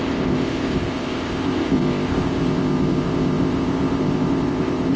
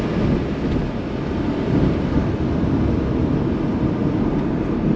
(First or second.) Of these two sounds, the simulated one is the first